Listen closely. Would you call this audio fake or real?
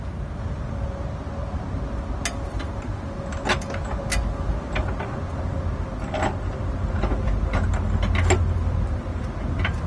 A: real